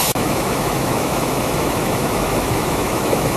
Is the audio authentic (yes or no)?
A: no